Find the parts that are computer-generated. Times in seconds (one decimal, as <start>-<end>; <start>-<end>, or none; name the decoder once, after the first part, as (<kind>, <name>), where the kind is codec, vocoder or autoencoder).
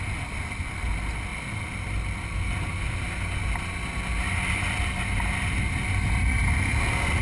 none